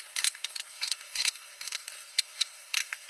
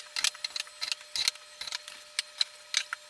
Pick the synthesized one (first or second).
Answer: first